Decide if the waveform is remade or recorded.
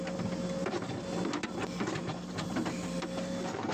recorded